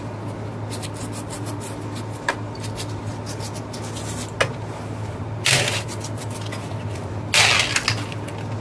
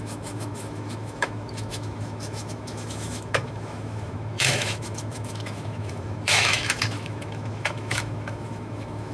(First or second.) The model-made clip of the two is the second